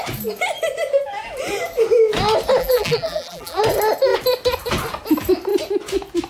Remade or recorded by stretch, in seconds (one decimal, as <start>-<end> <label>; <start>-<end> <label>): 0.0-2.6 recorded; 2.6-3.6 remade; 3.6-6.3 recorded